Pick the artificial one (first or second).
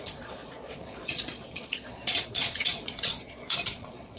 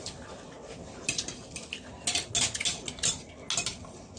first